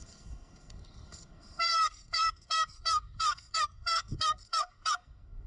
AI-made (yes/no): yes